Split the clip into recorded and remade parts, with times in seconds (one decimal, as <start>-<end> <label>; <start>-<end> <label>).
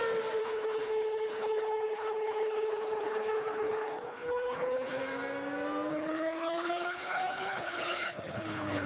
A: 0.0-0.4 recorded; 0.4-5.0 remade; 5.0-5.9 recorded; 5.9-8.9 remade